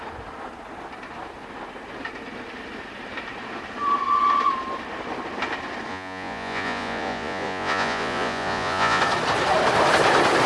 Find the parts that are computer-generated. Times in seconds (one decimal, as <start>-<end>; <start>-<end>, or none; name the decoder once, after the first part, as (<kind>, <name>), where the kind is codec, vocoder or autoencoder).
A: 5.9-9.0 (vocoder, Vocos)